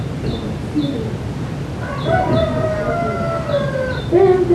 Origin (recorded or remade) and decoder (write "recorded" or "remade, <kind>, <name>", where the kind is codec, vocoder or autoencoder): recorded